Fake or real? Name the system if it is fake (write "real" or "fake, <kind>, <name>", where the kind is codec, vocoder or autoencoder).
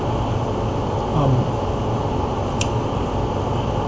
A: real